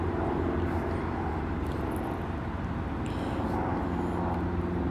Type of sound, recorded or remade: recorded